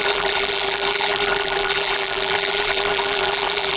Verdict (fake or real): fake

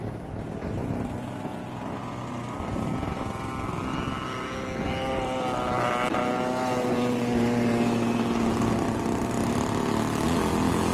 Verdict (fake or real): real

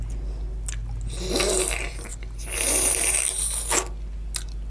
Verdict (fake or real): real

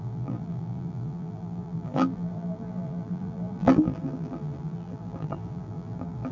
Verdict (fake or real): fake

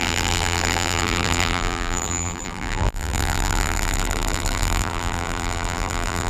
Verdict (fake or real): fake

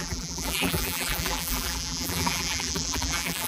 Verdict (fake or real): fake